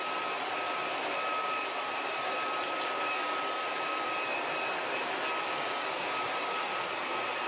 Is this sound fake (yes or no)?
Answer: yes